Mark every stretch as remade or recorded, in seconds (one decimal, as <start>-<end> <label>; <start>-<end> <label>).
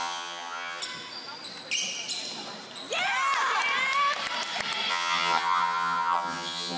0.0-0.8 remade; 0.8-4.9 recorded; 4.9-6.8 remade